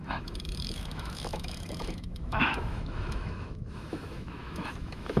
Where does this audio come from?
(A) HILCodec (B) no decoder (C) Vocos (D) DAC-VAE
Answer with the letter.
D